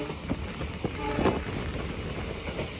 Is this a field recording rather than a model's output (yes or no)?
yes